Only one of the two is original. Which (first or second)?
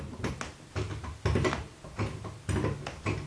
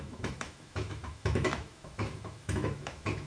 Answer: first